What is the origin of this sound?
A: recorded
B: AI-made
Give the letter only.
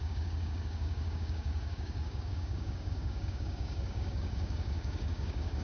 B